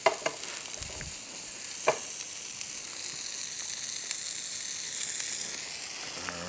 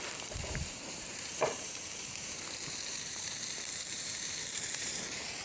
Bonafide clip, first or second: first